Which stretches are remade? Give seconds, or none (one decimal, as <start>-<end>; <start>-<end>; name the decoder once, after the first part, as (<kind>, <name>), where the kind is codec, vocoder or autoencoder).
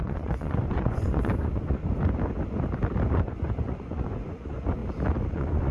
0.0-1.8 (vocoder, Vocos); 3.1-4.8; 5.3-5.7